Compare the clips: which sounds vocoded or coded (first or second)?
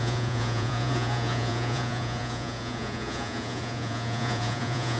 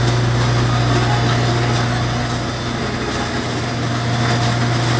first